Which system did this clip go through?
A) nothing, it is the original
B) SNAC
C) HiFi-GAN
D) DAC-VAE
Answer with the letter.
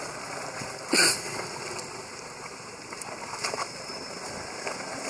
A